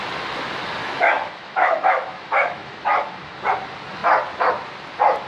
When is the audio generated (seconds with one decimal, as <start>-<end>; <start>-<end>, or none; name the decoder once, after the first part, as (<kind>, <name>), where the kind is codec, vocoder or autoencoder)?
0.8-3.4 (autoencoder, DAC-VAE)